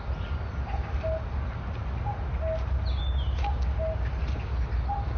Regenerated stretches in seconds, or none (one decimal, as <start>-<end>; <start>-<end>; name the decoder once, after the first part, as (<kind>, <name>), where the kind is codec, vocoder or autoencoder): none